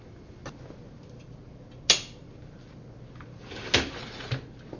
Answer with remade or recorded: recorded